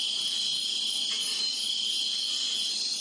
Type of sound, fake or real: real